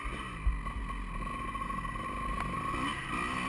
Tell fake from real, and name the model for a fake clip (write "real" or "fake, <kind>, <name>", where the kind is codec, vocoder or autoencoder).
real